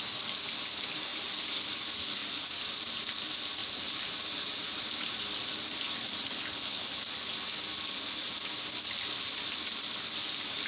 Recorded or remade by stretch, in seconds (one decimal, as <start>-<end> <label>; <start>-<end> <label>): 0.0-1.1 recorded; 1.1-1.6 remade; 1.6-3.6 recorded; 3.6-5.7 remade; 5.7-10.7 recorded